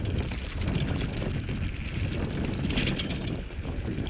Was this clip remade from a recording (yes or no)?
no